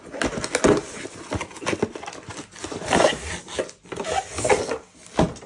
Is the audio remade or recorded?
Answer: recorded